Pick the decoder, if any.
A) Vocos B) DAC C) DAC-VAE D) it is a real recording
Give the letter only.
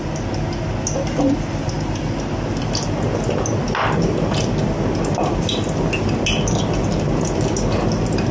D